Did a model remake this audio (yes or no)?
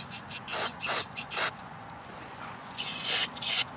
yes